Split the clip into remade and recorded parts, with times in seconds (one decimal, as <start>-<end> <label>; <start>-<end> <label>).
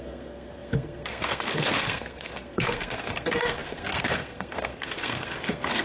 0.0-5.8 remade